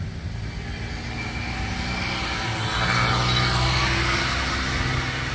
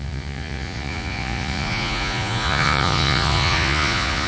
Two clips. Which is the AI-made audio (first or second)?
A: second